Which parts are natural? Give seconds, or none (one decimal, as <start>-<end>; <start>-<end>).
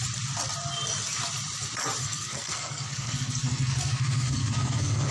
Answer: 0.0-2.0